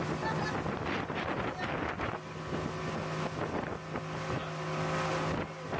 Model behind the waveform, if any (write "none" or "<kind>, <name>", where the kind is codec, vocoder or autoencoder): none